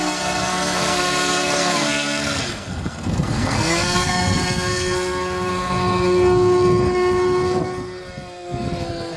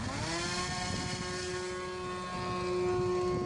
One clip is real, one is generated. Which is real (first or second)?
second